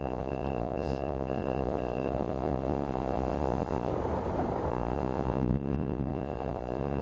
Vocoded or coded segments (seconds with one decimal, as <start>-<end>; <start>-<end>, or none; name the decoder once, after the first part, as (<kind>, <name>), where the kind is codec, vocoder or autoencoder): 0.0-3.9 (vocoder, Vocos); 4.7-7.0